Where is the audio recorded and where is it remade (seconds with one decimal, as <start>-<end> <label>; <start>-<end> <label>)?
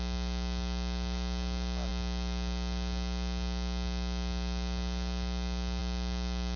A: 0.0-6.6 recorded